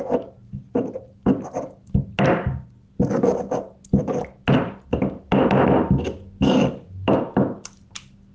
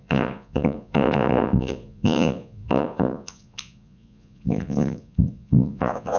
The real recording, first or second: first